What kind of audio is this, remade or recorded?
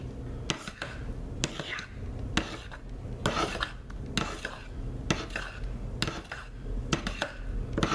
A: recorded